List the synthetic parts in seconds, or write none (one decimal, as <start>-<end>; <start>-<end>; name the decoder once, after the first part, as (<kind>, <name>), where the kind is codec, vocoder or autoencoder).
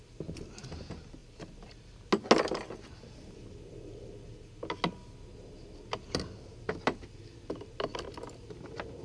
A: none